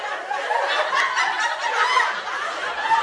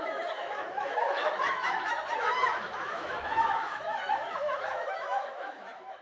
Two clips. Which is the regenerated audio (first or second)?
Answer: second